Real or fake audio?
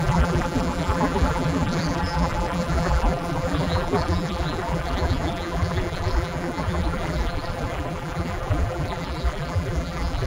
fake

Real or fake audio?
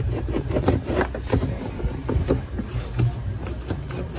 real